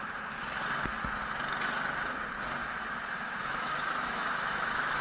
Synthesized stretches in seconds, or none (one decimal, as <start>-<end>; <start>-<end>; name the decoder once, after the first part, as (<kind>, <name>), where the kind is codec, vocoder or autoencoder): 2.6-5.0 (autoencoder, DAC-VAE)